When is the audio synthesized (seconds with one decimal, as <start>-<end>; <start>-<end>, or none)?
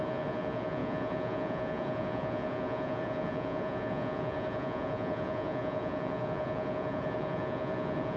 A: 0.0-8.2